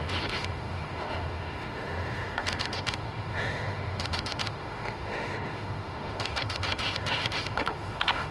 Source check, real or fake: fake